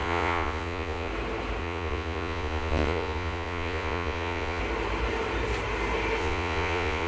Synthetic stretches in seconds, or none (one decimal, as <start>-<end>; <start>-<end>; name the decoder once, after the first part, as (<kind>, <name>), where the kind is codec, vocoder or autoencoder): 0.0-1.1 (vocoder, Vocos); 1.6-4.6; 6.2-7.1

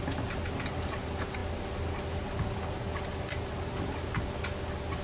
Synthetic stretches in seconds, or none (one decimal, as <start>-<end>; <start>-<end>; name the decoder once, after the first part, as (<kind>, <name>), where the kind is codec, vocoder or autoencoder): none

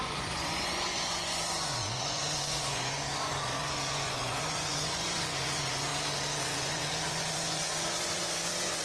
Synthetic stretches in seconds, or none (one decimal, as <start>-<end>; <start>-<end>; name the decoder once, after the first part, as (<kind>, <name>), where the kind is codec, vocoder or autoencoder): 0.0-5.9 (vocoder, Vocos); 6.4-8.8

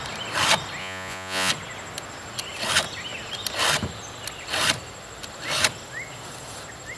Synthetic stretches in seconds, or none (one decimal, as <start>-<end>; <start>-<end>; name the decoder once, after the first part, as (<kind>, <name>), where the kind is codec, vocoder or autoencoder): 0.8-1.5 (vocoder, Vocos)